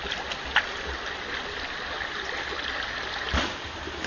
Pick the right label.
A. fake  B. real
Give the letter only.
B